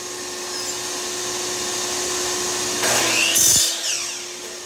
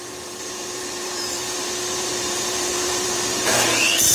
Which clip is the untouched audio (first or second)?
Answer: first